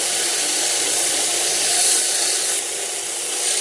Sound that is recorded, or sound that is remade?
recorded